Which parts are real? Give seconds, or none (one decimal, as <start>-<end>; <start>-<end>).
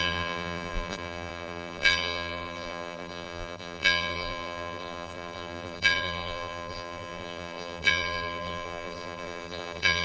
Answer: none